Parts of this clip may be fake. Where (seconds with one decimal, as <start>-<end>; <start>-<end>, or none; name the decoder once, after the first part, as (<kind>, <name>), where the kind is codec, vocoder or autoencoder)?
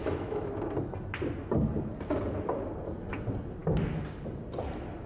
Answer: 0.0-0.5 (autoencoder, DAC-VAE)